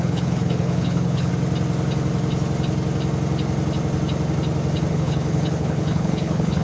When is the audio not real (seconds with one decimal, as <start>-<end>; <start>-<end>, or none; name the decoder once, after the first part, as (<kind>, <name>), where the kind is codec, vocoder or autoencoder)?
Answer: 0.0-1.3 (codec, HILCodec); 4.9-6.6